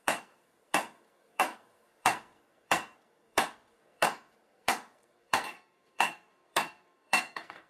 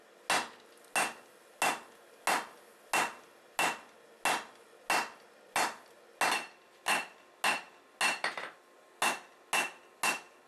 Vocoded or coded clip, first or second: first